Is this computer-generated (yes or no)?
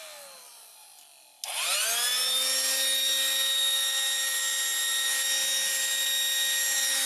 no